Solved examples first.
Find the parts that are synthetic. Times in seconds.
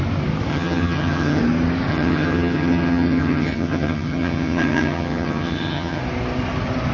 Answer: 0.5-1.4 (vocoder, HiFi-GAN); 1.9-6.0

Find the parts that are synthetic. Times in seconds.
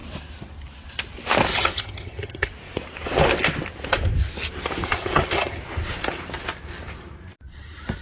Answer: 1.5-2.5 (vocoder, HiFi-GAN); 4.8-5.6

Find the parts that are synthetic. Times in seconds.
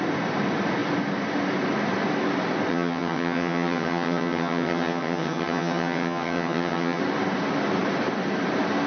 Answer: 2.7-7.0 (vocoder, HiFi-GAN)